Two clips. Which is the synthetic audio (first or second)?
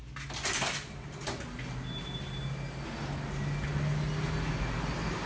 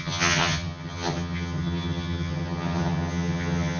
second